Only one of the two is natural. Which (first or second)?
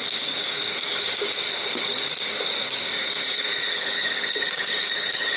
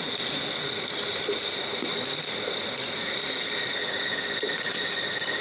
second